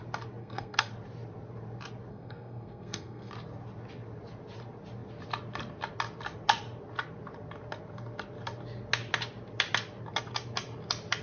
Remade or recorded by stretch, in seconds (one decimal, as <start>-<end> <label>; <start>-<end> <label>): 0.0-0.4 recorded; 0.4-0.9 remade; 0.9-2.1 recorded; 2.1-3.3 remade; 3.3-11.2 recorded